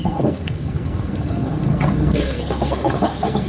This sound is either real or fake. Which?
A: fake